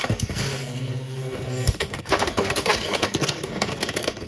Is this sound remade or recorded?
remade